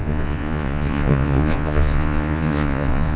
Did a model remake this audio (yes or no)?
yes